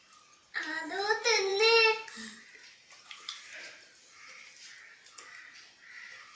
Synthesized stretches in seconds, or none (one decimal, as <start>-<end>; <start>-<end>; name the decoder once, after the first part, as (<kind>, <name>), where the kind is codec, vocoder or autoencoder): 1.5-4.8 (vocoder, BigVGAN v2)